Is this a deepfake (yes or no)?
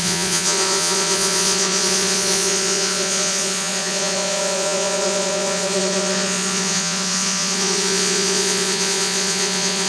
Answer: yes